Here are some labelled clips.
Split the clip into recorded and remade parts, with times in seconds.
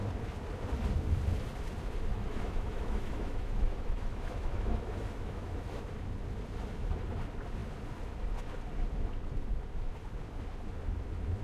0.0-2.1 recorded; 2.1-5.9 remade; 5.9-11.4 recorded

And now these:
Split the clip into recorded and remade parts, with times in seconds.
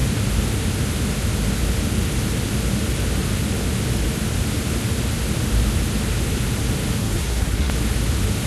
0.0-7.0 recorded; 7.0-7.7 remade; 7.7-8.5 recorded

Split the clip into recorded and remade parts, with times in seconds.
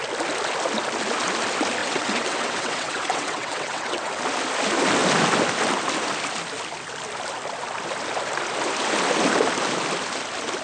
0.0-1.8 recorded; 1.8-4.1 remade; 4.1-10.6 recorded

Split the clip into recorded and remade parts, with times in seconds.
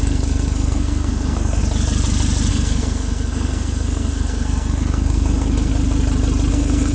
0.0-1.6 remade; 1.6-2.5 recorded; 2.5-5.7 remade; 5.7-6.5 recorded; 6.5-6.9 remade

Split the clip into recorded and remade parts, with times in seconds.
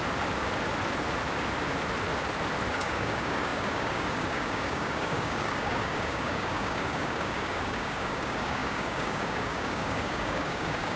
0.0-2.7 recorded; 2.7-11.0 remade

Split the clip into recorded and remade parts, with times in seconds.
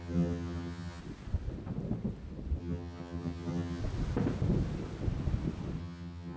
0.0-1.0 remade; 1.0-2.6 recorded; 2.6-3.8 remade; 3.8-5.8 recorded; 5.8-6.4 remade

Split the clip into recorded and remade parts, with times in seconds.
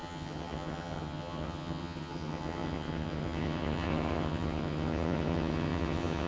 0.0-6.3 remade